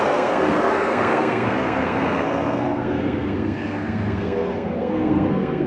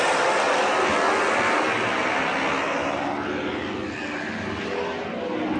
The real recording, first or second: second